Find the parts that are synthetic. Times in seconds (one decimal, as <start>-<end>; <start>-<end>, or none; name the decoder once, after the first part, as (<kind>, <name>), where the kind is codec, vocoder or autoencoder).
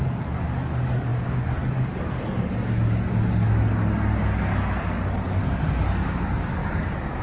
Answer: 0.0-7.2 (codec, DAC)